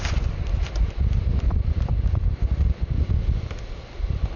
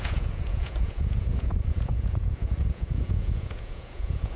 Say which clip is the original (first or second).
first